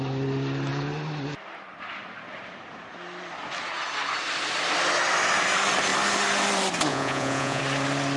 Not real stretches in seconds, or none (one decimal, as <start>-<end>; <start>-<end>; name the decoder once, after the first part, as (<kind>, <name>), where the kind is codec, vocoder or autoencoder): 6.9-7.6 (vocoder, Vocos)